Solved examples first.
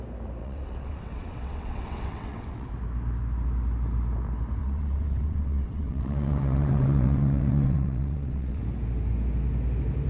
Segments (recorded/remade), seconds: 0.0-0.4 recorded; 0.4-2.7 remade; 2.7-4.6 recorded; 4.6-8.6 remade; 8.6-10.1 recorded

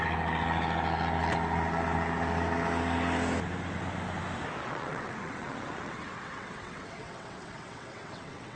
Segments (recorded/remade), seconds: 0.0-4.6 recorded; 4.6-8.6 remade

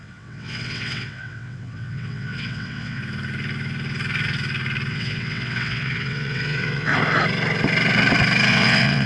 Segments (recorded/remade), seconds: 0.0-3.0 remade; 3.0-4.9 recorded; 4.9-6.9 remade; 6.9-8.5 recorded; 8.5-9.1 remade

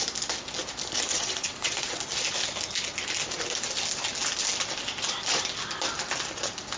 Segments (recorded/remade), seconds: 0.0-1.1 recorded; 1.1-2.0 remade; 2.0-6.8 recorded

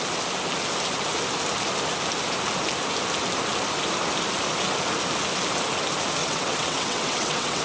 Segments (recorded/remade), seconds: 0.0-6.2 recorded; 6.2-7.6 remade

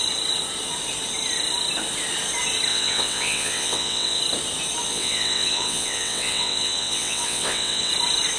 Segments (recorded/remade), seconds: 0.0-2.7 recorded; 2.7-4.2 remade; 4.2-4.9 recorded; 4.9-7.9 remade; 7.9-8.4 recorded

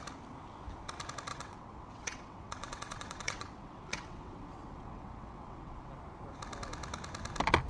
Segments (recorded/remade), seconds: 0.0-1.3 recorded; 1.3-5.9 remade; 5.9-7.7 recorded